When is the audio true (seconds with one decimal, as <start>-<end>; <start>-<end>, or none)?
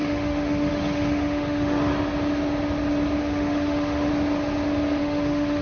1.9-3.2; 4.1-5.0